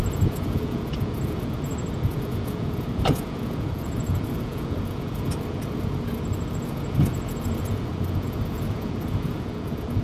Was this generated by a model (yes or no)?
yes